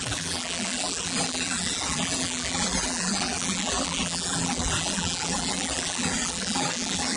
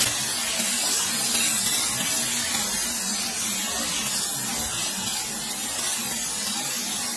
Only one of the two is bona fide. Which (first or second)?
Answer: second